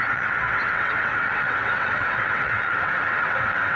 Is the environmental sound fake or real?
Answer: fake